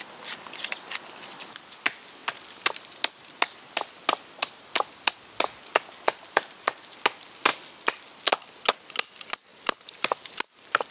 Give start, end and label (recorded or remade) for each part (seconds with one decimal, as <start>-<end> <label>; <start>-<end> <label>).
0.0-9.5 recorded; 9.5-10.3 remade; 10.3-10.9 recorded